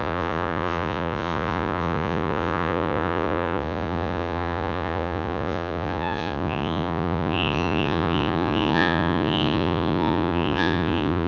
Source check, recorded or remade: remade